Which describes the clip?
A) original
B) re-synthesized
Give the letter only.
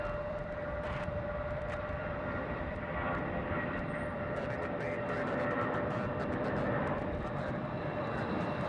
B